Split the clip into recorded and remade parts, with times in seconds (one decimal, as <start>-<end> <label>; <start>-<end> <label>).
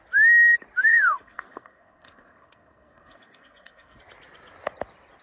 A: 0.0-0.9 recorded; 0.9-4.0 remade; 4.0-5.2 recorded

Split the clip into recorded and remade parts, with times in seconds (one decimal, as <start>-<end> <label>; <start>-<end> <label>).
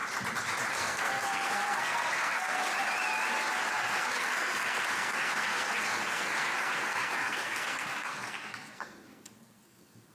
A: 0.0-0.7 recorded; 0.7-2.7 remade; 2.7-3.7 recorded; 3.7-10.1 remade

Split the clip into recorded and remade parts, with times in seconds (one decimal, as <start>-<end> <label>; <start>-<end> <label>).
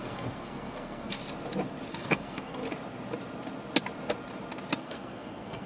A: 0.0-1.2 remade; 1.2-1.9 recorded; 1.9-2.6 remade; 2.6-4.8 recorded; 4.8-5.7 remade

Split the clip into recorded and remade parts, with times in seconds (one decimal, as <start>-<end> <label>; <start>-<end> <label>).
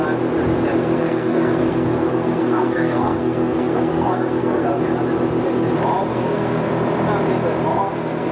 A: 0.0-0.8 recorded; 0.8-4.8 remade; 4.8-6.1 recorded; 6.1-6.7 remade; 6.7-7.7 recorded; 7.7-8.3 remade